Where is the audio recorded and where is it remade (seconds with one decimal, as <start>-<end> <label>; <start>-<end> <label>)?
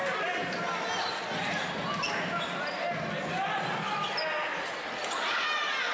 0.0-5.9 recorded